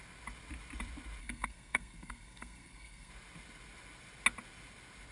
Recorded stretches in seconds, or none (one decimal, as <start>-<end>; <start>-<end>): 0.0-1.2; 3.1-5.1